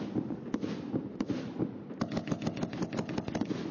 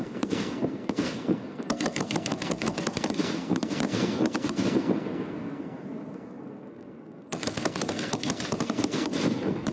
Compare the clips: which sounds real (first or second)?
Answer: first